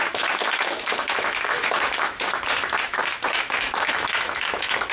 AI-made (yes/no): yes